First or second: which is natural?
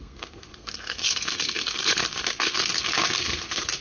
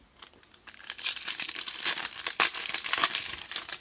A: second